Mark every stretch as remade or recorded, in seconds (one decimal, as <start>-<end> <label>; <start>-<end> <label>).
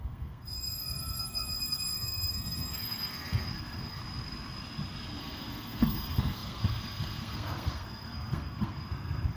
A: 0.0-4.0 remade; 4.0-5.2 recorded; 5.2-9.4 remade